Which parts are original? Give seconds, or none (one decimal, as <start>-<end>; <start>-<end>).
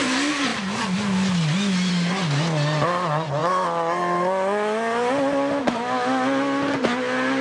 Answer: 0.0-7.4